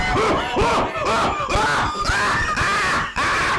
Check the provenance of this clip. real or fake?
real